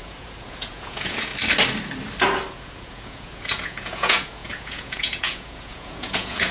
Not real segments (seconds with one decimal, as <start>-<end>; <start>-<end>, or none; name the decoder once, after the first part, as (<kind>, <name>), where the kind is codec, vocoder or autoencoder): 0.0-1.3 (vocoder, Vocos); 2.5-6.5